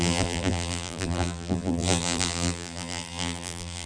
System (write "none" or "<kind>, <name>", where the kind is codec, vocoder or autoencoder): vocoder, BigVGAN v2